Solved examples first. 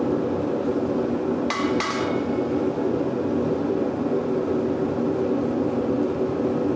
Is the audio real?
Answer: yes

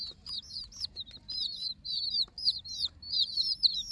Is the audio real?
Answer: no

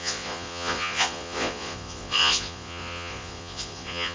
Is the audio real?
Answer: no